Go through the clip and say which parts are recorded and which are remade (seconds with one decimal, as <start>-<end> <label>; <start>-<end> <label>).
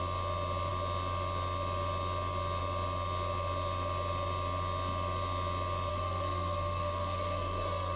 0.0-5.9 recorded; 5.9-8.0 remade